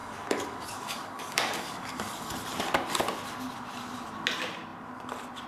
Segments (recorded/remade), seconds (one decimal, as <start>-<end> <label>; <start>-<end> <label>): 0.0-2.3 remade; 2.3-5.5 recorded